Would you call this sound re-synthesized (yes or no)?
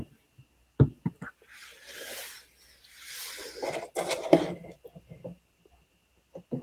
no